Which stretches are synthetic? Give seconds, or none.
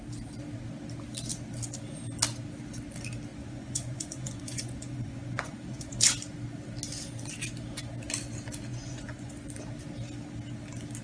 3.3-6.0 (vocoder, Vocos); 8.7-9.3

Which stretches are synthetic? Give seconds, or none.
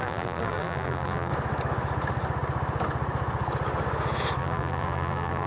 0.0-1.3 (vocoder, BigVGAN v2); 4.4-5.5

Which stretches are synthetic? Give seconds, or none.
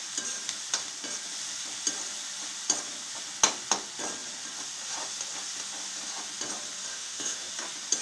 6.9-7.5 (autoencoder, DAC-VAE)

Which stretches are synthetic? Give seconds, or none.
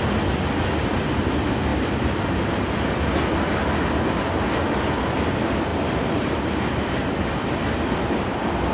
1.7-2.8 (vocoder, BigVGAN v2); 5.7-8.7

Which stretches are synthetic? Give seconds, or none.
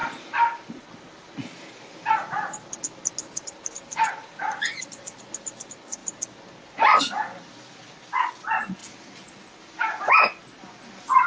0.0-0.7 (vocoder, BigVGAN v2); 8.8-10.0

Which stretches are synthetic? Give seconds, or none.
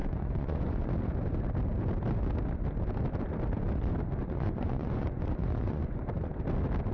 0.0-0.9 (vocoder, Vocos); 4.2-6.0